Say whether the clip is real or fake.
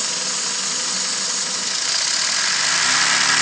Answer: real